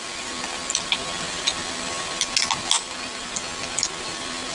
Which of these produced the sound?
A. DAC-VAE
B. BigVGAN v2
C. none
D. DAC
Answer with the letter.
C